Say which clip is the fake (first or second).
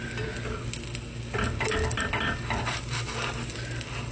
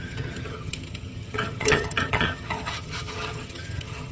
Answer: second